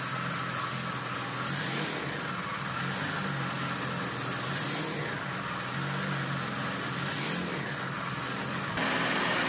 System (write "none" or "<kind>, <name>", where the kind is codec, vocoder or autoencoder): none